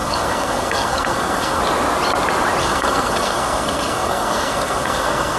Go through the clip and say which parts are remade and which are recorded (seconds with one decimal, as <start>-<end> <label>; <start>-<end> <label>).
0.0-1.6 remade; 1.6-2.6 recorded; 2.6-5.4 remade